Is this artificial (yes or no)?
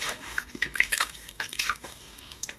yes